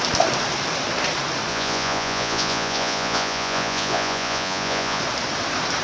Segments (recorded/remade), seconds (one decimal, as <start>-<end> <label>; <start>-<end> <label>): 0.0-1.5 recorded; 1.5-5.0 remade; 5.0-5.8 recorded